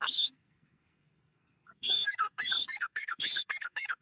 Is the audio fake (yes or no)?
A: yes